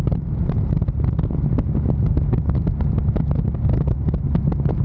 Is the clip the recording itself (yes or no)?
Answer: yes